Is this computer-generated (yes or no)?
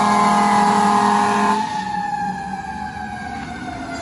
no